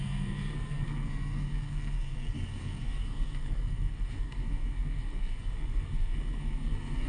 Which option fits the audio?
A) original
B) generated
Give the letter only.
B